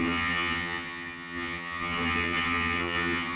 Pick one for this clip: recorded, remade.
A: remade